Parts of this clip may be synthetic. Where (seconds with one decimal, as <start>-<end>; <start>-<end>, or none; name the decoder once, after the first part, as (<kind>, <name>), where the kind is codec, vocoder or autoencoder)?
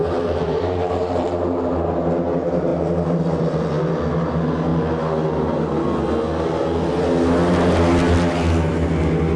0.0-1.6 (vocoder, BigVGAN v2)